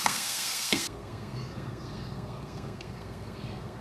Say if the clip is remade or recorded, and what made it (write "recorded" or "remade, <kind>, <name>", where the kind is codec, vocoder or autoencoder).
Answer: remade, codec, SNAC